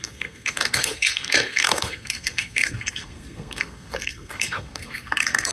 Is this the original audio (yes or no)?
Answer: no